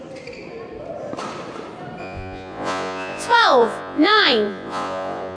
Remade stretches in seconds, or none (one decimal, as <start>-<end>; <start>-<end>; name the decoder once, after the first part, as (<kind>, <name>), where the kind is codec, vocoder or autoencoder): 2.0-5.4 (vocoder, Vocos)

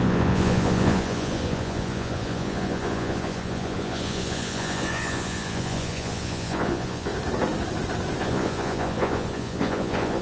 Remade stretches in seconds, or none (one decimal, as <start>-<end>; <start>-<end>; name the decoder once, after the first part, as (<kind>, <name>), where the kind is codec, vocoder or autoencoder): 0.0-7.1 (vocoder, Vocos); 8.2-10.2

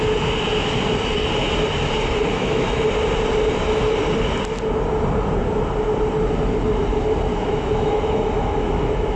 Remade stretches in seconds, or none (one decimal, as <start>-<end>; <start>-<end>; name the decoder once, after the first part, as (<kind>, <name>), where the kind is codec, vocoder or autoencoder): 2.3-2.9 (autoencoder, DAC-VAE); 7.3-9.2

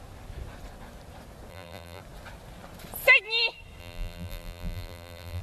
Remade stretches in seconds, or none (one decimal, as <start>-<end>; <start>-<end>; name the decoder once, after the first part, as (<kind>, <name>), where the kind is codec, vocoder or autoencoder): 1.5-2.0 (vocoder, BigVGAN v2); 3.8-5.4